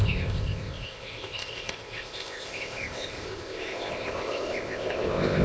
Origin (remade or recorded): remade